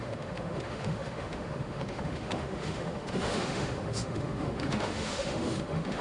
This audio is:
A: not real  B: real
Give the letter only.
A